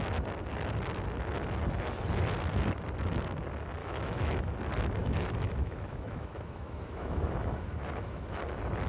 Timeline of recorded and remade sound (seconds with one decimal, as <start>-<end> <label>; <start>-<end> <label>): 0.0-3.8 recorded; 3.8-4.5 remade; 4.5-5.0 recorded; 5.0-8.4 remade; 8.4-8.9 recorded